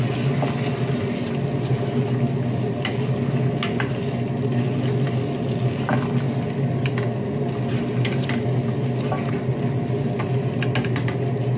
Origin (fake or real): real